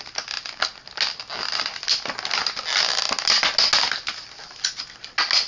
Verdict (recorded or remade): recorded